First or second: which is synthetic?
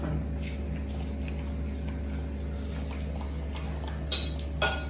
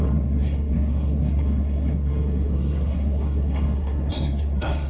second